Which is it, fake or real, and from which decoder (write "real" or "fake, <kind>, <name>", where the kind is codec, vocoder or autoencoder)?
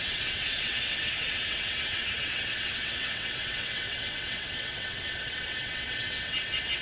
fake, vocoder, WaveNeXt